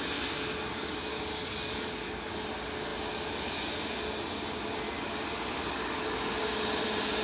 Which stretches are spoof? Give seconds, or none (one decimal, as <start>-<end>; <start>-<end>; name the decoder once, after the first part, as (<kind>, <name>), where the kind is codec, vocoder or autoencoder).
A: 1.1-2.3 (codec, DAC); 5.5-6.2